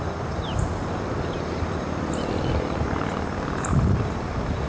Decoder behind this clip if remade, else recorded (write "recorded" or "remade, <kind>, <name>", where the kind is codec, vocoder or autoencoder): recorded